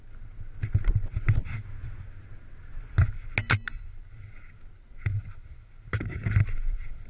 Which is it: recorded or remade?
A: recorded